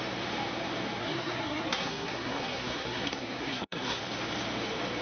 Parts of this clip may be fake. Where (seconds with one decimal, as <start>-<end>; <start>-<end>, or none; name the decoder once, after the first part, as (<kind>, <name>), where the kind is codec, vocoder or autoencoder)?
1.0-4.0 (codec, SNAC)